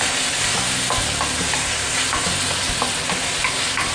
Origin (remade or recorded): recorded